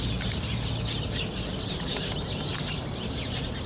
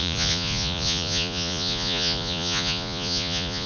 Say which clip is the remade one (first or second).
second